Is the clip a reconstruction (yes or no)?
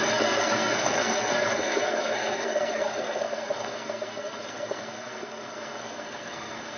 yes